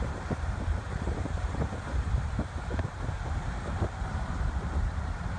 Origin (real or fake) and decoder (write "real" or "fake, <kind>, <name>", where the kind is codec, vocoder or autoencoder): fake, vocoder, BigVGAN v2